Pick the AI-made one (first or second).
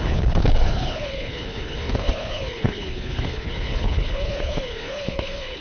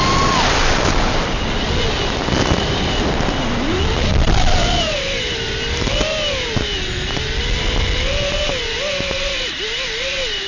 first